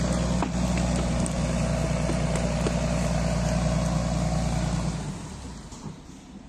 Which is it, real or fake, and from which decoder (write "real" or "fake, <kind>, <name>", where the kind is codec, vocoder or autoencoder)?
real